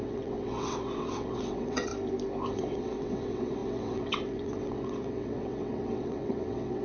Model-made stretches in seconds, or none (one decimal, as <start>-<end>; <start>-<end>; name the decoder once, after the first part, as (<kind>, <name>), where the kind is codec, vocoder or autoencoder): 0.0-1.9 (vocoder, WaveNeXt); 2.5-6.8